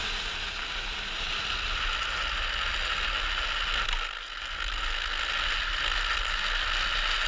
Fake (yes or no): no